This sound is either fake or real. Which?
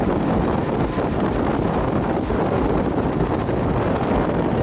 real